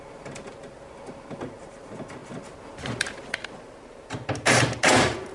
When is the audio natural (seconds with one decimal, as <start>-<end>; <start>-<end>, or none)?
0.0-5.3